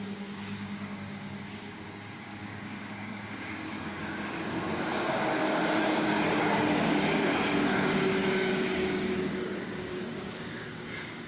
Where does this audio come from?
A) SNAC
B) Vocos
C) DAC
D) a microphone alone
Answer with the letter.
C